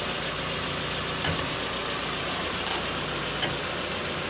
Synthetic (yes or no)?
no